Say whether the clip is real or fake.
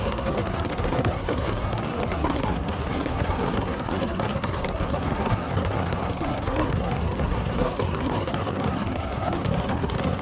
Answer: fake